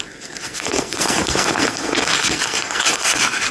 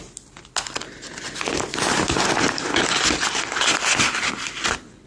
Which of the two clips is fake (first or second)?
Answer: first